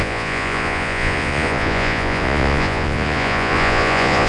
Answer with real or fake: fake